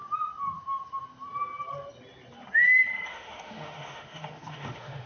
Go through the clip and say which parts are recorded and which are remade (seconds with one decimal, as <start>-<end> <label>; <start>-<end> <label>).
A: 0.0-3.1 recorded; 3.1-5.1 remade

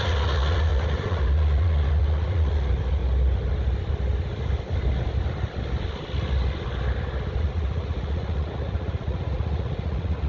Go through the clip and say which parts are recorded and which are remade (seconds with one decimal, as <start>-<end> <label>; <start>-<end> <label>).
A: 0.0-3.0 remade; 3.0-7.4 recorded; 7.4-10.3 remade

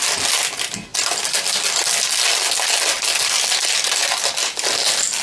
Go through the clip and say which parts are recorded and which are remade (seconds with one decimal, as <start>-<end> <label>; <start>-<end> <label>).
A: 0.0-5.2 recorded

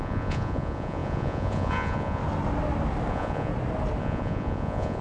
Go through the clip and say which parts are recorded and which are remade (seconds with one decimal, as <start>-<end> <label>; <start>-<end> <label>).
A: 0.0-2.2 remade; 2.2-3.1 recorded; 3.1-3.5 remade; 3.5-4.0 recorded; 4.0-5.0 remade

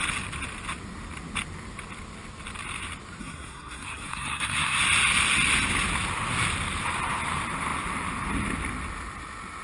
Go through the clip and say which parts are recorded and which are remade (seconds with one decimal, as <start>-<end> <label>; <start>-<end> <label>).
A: 0.0-3.2 recorded; 3.2-4.8 remade; 4.8-9.6 recorded